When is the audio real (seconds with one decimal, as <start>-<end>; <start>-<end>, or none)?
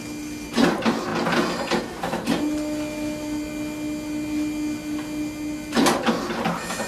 0.0-6.9